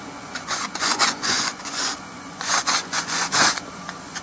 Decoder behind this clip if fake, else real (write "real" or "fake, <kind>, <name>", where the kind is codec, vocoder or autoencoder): fake, vocoder, Vocos